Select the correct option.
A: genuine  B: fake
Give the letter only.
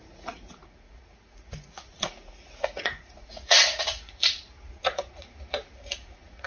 B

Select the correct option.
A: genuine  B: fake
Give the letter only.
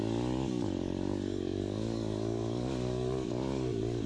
B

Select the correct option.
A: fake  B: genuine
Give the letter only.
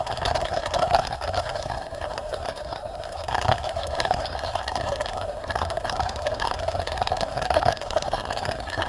A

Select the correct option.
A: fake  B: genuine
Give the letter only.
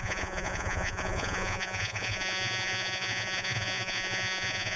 A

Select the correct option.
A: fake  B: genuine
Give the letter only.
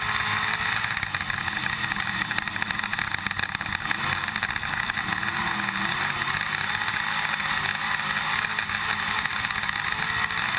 B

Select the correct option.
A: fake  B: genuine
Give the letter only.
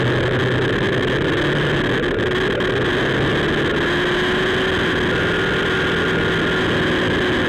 B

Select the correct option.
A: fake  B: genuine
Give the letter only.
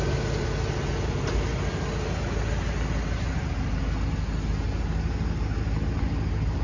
B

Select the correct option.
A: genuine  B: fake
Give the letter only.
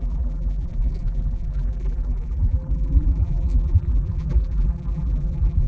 B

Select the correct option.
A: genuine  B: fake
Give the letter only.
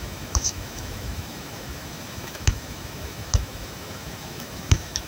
B